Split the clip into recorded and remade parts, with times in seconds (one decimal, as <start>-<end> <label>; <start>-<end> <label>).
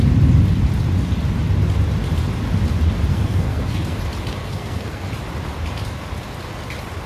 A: 0.0-3.1 recorded; 3.1-4.0 remade; 4.0-4.4 recorded; 4.4-5.1 remade; 5.1-7.1 recorded